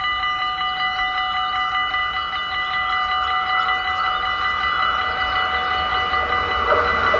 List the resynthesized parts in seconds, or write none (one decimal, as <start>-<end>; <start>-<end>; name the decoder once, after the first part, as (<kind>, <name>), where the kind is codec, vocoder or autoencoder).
none